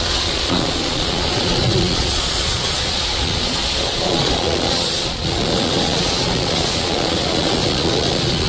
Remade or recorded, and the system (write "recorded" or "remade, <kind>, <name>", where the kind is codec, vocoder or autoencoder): remade, vocoder, Vocos